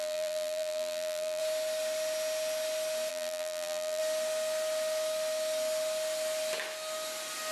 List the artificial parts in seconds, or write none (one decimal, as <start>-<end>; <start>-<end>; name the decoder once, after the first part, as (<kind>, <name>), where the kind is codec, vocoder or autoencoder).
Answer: 0.0-1.4 (vocoder, BigVGAN v2); 3.1-4.0